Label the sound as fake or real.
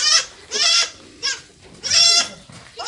real